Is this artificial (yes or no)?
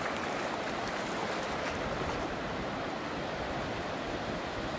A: no